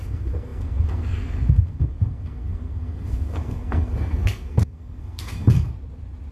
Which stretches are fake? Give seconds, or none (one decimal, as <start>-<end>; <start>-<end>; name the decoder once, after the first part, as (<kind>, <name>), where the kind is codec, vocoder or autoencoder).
0.0-5.7 (codec, SNAC)

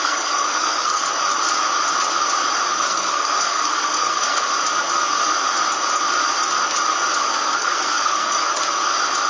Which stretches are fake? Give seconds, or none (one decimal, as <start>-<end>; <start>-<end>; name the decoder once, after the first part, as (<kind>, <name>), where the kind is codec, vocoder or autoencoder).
0.0-1.0 (codec, SNAC); 2.8-4.5; 7.2-8.5

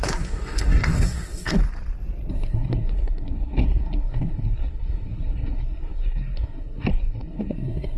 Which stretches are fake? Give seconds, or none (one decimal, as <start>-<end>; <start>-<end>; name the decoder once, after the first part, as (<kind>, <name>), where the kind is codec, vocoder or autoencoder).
0.0-1.6 (codec, SNAC); 2.3-8.0

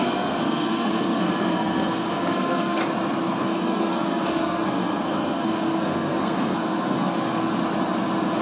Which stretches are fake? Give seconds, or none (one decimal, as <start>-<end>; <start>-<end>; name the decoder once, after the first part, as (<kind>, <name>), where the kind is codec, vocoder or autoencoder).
0.0-2.8 (codec, SNAC); 3.4-7.5

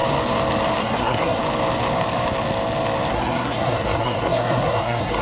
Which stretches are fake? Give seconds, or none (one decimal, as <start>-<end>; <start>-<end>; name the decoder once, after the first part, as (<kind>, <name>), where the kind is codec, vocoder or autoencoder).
0.8-1.4 (codec, SNAC); 3.1-5.2

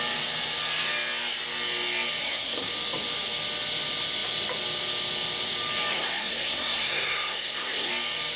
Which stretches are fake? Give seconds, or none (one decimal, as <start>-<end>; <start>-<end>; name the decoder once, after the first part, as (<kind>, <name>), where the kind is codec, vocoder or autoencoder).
2.2-2.7 (codec, SNAC); 5.9-7.9

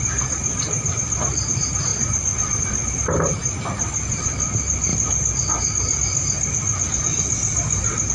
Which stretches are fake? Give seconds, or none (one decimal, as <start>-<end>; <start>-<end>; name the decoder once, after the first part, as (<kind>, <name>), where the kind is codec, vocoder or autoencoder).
none